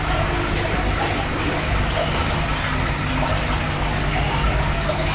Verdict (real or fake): real